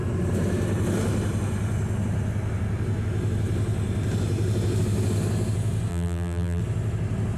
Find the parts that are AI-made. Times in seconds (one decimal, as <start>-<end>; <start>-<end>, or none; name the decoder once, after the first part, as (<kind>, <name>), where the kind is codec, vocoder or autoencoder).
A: 5.9-6.6 (vocoder, BigVGAN v2)